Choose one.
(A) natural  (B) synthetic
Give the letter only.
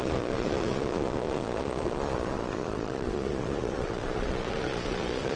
B